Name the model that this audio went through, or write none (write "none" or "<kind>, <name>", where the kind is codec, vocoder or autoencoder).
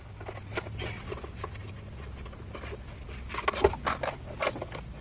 none